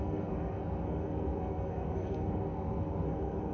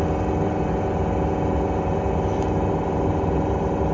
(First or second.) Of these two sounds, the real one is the second